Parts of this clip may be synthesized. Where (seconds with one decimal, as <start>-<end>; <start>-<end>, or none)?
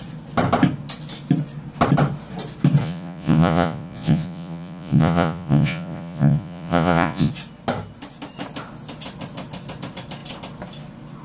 2.8-7.3